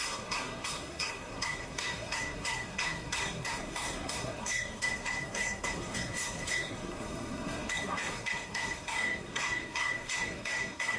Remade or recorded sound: remade